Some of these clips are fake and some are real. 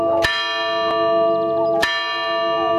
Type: real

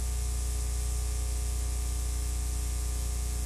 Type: real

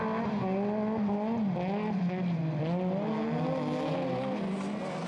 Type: real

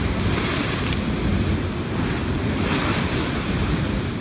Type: real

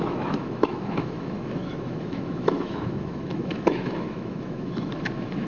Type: fake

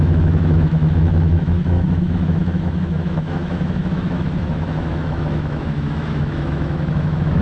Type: fake